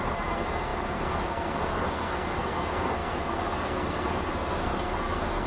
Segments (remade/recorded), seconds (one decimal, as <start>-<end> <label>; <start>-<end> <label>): 0.0-5.5 remade